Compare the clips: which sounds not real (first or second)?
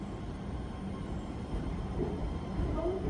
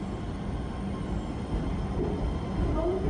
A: first